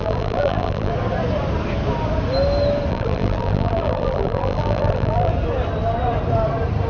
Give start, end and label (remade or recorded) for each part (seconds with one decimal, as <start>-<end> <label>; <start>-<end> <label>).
0.0-0.9 remade; 0.9-2.9 recorded; 2.9-5.3 remade; 5.3-6.9 recorded